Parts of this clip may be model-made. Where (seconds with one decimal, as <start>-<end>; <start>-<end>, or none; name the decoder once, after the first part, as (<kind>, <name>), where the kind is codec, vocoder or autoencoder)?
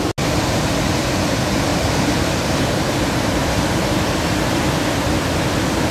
1.7-4.6 (vocoder, BigVGAN v2)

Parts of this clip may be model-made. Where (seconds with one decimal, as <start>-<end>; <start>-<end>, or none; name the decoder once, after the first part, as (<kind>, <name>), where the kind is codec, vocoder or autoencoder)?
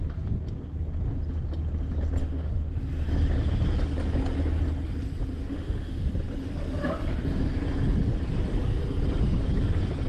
2.2-2.7 (autoencoder, DAC-VAE); 5.5-6.1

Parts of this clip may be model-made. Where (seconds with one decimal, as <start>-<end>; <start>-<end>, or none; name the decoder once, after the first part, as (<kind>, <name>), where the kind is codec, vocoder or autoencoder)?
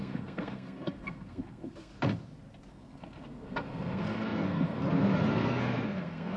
0.0-1.9 (codec, SNAC); 2.7-6.4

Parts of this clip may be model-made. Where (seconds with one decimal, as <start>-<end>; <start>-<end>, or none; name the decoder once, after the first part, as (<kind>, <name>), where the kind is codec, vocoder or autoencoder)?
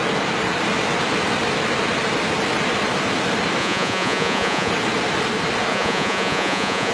3.6-4.7 (vocoder, Vocos); 5.7-6.9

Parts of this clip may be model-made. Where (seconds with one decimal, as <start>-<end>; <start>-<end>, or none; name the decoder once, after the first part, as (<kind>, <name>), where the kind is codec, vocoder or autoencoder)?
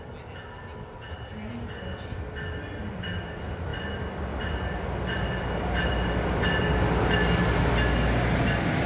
none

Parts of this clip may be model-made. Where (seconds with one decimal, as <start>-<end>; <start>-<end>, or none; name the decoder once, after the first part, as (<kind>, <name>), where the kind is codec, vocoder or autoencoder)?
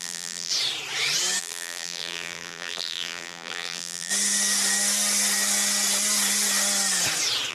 0.0-0.5 (vocoder, BigVGAN v2); 1.4-4.1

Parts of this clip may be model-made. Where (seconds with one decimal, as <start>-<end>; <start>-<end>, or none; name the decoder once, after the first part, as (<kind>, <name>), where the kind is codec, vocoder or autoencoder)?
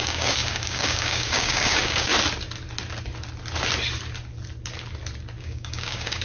0.0-2.1 (codec, DAC); 5.4-6.2